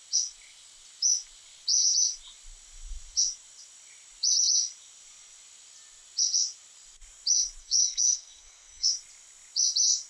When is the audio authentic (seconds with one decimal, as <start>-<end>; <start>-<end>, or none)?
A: 0.0-7.6; 8.9-10.1